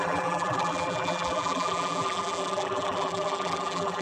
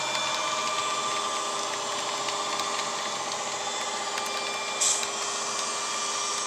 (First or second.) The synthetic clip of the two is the first